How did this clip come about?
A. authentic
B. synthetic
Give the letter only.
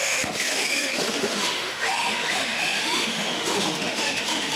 B